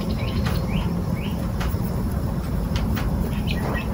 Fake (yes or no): yes